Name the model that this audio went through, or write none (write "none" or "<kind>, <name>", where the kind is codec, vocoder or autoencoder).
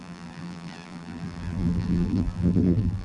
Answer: vocoder, BigVGAN v2